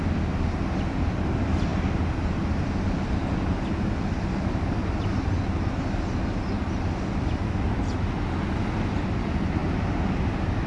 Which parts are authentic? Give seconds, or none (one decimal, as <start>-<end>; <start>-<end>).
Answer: 0.0-10.7

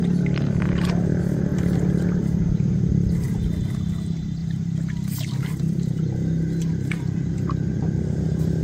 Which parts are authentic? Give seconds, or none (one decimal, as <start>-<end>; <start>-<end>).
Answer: 0.0-1.5; 2.9-4.4; 6.7-8.6

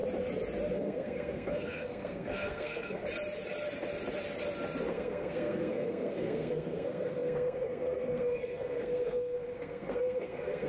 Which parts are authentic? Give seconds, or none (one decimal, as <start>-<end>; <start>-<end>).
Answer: 0.0-0.7; 3.0-4.9

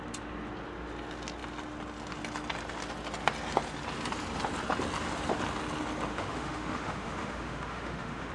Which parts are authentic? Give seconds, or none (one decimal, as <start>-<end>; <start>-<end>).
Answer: 0.0-6.1

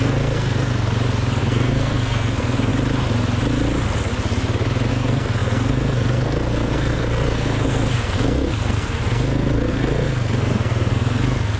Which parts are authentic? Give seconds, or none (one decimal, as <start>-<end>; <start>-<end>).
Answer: 0.7-1.4; 2.7-4.9

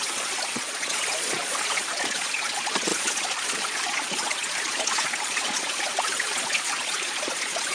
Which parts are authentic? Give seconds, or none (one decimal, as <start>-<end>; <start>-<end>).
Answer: none

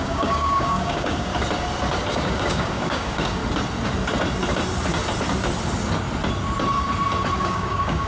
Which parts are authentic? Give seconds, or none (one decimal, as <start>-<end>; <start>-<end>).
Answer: 1.3-2.1; 3.4-7.4

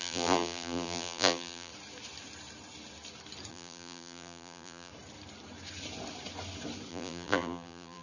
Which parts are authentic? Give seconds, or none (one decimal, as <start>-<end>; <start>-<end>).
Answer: 1.7-3.5; 4.9-6.9